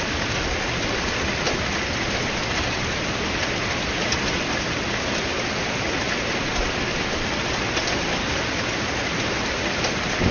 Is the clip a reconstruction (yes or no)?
no